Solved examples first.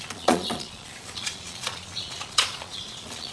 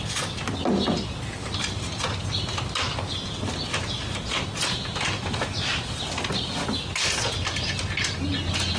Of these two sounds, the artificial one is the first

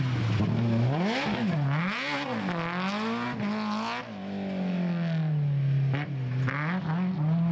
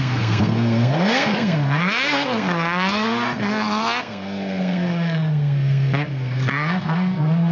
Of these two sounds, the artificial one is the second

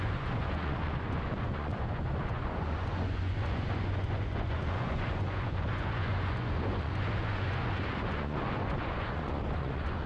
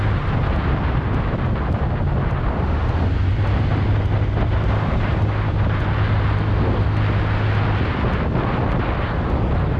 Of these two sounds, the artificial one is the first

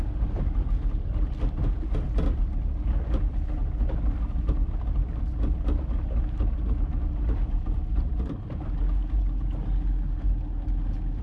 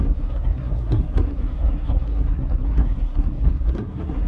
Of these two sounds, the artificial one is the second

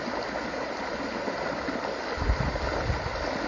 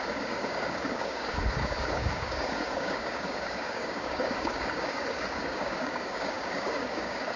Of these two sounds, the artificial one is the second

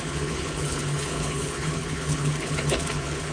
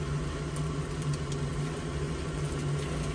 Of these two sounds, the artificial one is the first